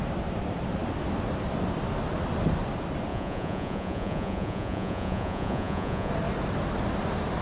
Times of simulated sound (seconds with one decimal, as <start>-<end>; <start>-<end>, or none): 3.1-6.1